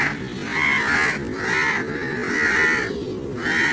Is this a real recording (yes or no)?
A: yes